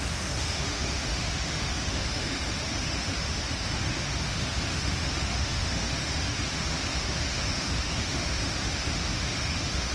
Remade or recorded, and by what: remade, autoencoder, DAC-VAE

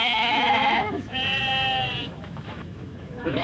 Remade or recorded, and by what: remade, autoencoder, DAC-VAE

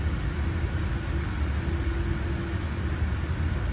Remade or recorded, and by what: recorded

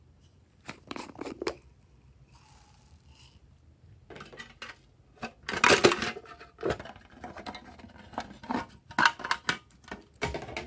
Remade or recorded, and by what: recorded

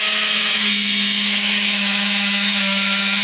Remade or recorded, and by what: remade, autoencoder, DAC-VAE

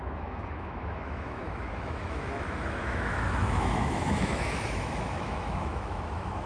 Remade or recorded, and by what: remade, autoencoder, DAC-VAE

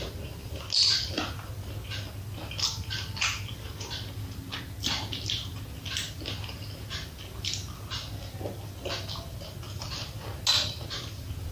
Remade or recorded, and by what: recorded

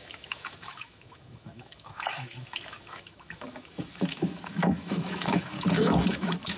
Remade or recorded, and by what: remade, autoencoder, DAC-VAE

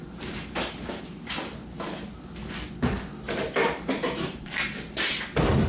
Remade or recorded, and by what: recorded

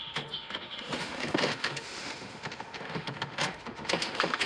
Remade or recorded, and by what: remade, autoencoder, DAC-VAE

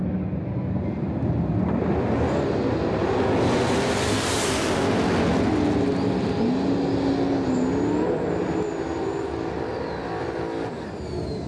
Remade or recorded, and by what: recorded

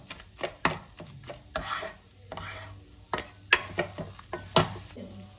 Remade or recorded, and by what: recorded